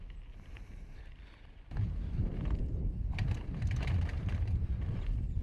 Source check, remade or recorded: remade